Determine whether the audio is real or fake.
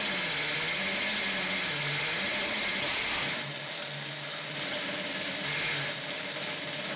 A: real